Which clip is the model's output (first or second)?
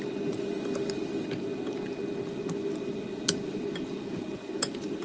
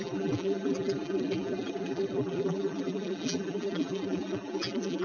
second